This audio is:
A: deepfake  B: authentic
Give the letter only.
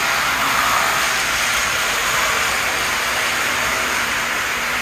B